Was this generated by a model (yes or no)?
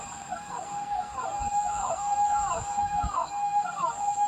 yes